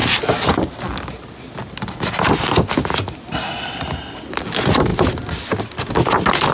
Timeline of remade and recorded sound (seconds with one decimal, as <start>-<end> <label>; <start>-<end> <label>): 0.0-6.5 recorded